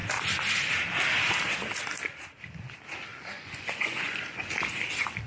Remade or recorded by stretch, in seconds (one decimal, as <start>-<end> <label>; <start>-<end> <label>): 0.0-3.1 recorded; 3.1-4.5 remade; 4.5-5.3 recorded